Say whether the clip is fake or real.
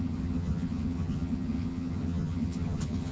fake